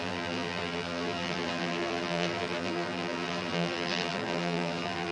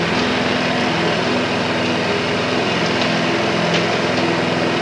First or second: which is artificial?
first